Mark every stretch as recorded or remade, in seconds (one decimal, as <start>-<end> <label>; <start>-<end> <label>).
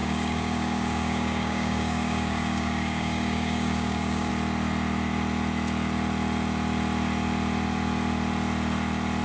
0.0-4.3 remade; 4.3-9.2 recorded